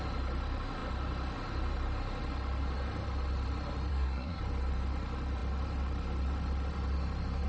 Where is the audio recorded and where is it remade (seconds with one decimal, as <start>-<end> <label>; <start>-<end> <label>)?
0.0-3.9 recorded; 3.9-4.4 remade; 4.4-7.5 recorded